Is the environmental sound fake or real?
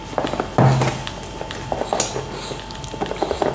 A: real